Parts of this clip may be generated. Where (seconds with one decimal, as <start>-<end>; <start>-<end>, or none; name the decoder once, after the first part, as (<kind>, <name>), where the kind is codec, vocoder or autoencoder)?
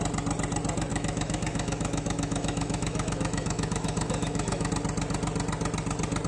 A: 0.9-4.7 (autoencoder, DAC-VAE)